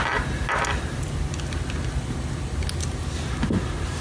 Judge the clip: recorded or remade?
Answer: recorded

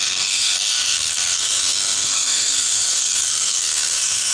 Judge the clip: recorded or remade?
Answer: remade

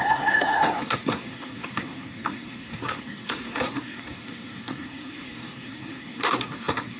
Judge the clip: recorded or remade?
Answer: remade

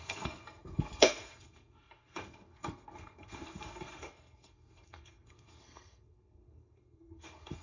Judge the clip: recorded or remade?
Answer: remade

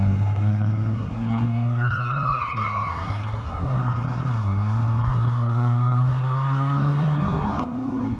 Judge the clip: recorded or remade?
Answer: remade